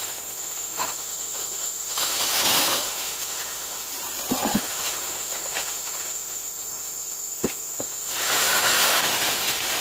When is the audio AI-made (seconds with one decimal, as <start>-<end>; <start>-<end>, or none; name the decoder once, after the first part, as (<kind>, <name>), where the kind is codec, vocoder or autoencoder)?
0.0-3.9 (autoencoder, DAC-VAE); 4.5-9.8